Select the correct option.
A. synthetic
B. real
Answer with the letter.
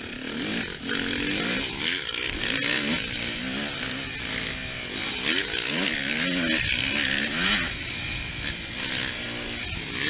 B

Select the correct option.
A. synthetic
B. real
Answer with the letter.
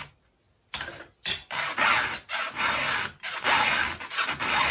B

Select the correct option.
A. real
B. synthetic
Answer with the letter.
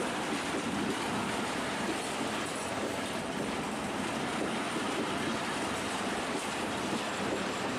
B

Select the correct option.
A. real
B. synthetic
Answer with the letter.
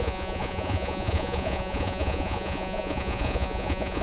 B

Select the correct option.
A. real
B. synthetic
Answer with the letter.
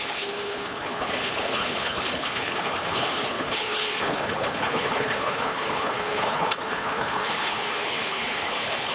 B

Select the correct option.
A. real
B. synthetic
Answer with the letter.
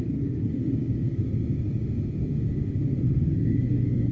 B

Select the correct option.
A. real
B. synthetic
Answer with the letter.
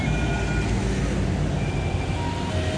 A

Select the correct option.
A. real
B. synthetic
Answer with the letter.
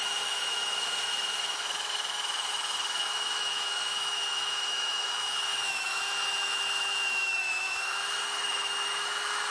B